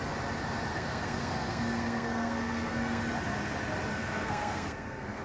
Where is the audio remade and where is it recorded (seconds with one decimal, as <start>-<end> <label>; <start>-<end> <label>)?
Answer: 0.0-0.7 recorded; 0.7-3.0 remade; 3.0-3.9 recorded; 3.9-5.2 remade